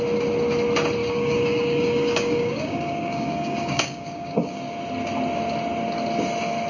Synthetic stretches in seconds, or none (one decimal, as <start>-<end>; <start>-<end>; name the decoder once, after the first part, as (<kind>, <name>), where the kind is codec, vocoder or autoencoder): 1.0-4.6 (codec, DAC)